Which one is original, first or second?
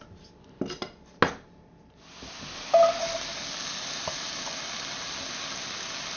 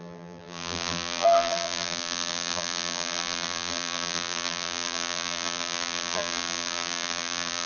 first